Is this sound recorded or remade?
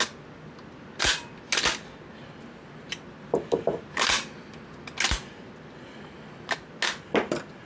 recorded